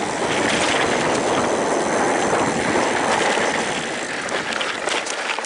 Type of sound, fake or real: real